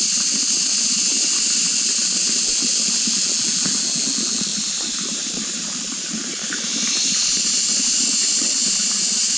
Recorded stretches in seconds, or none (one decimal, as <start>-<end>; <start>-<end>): 0.0-4.5; 8.6-9.4